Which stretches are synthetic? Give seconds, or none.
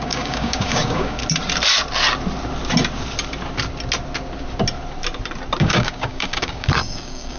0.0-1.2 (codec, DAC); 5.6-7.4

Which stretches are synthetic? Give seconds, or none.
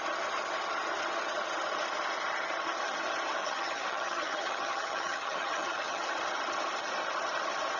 3.4-6.0 (vocoder, HiFi-GAN)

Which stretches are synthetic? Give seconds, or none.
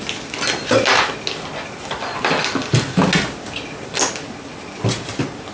none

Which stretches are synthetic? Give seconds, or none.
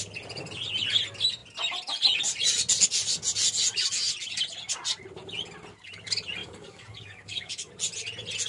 6.4-7.7 (codec, DAC)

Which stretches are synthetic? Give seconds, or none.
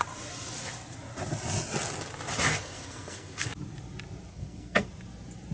2.5-3.5 (codec, SNAC); 4.3-4.9